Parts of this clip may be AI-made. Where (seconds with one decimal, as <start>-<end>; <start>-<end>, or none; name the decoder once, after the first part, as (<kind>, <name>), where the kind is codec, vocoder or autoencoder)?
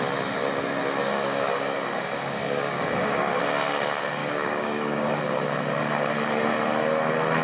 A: 1.0-3.4 (codec, DAC); 4.2-5.2